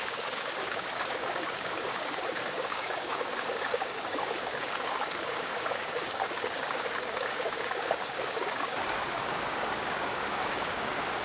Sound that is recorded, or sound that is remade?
remade